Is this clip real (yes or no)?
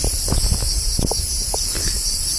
yes